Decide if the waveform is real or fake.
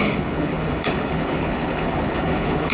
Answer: fake